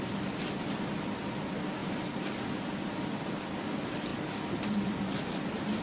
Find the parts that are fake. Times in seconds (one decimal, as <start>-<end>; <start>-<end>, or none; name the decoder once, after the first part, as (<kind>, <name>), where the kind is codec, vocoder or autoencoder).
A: 1.8-2.4 (vocoder, BigVGAN v2); 4.1-5.8